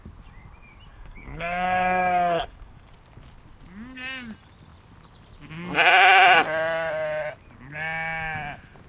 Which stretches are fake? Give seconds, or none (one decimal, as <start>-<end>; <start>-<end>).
0.9-2.9